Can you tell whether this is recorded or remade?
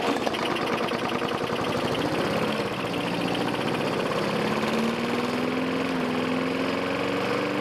recorded